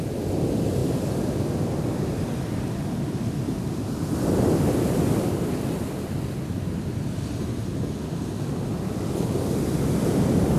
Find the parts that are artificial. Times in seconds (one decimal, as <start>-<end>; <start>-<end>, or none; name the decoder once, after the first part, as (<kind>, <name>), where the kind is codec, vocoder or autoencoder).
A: 0.0-0.8 (vocoder, BigVGAN v2); 1.8-10.6